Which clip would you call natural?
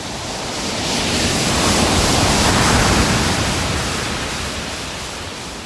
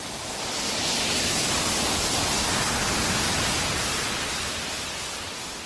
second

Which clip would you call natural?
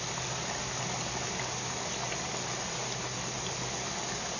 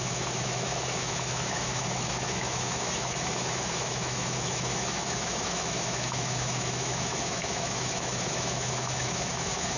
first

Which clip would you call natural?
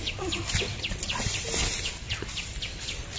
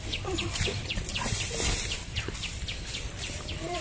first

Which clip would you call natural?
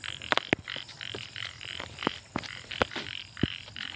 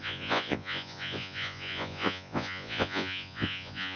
first